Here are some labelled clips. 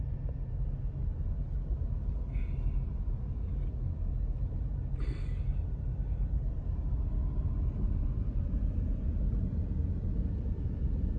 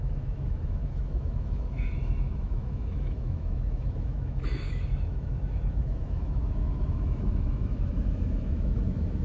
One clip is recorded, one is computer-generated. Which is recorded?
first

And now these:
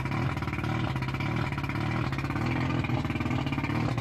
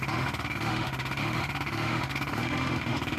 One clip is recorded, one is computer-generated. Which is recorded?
first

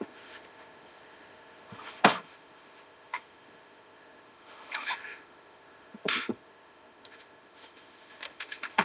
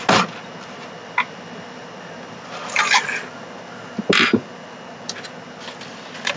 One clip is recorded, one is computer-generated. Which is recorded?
second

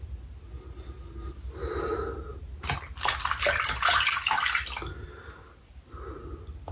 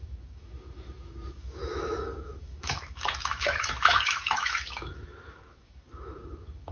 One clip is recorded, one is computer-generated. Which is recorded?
first